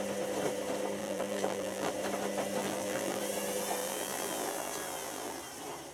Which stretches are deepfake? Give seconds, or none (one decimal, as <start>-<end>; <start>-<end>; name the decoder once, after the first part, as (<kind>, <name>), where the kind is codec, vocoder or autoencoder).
1.0-1.9 (vocoder, BigVGAN v2); 2.6-3.2; 3.8-5.4